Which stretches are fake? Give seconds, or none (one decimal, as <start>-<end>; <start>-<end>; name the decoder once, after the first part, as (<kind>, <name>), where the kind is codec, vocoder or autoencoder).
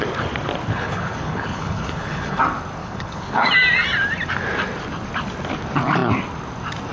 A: 0.7-2.4 (codec, HILCodec); 2.8-3.5